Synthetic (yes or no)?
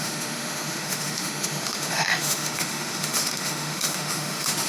yes